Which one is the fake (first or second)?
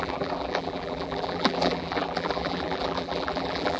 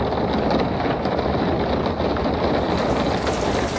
first